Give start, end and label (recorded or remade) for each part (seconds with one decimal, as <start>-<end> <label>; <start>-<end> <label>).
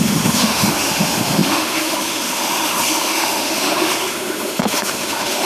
0.0-5.4 remade